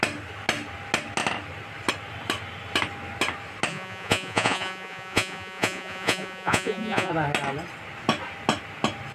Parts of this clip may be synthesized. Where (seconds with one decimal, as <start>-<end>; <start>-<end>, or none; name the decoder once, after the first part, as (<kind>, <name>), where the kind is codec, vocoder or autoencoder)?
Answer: 3.7-7.1 (vocoder, Vocos)